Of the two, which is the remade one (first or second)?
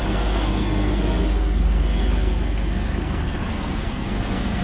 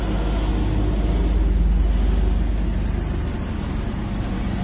first